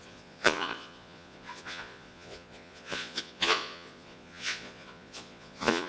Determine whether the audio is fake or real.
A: fake